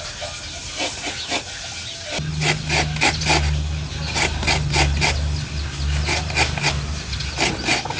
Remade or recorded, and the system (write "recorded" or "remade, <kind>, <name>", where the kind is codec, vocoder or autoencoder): recorded